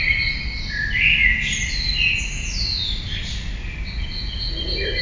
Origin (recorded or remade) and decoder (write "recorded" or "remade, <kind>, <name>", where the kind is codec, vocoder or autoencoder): recorded